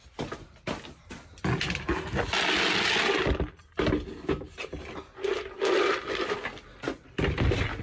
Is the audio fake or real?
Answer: real